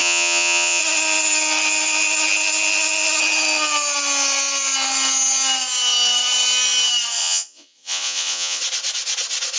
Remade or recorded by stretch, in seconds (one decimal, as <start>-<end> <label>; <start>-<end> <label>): 0.0-0.8 remade; 0.8-7.2 recorded; 7.2-8.6 remade; 8.6-9.6 recorded